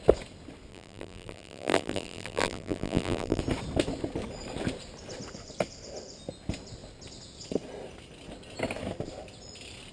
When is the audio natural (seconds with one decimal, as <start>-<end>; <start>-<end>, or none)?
0.0-0.7; 3.4-9.9